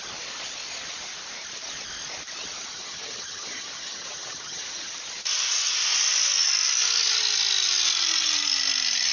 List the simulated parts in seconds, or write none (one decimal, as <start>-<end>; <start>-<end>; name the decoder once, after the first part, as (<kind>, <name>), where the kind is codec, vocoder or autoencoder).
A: 2.7-5.0 (vocoder, HiFi-GAN)